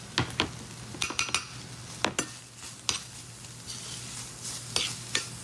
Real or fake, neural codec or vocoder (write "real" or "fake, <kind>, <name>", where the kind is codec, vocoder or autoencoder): real